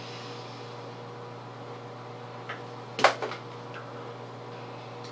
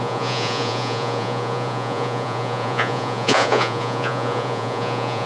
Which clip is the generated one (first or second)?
second